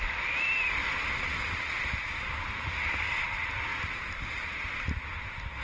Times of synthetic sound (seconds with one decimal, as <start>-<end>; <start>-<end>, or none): none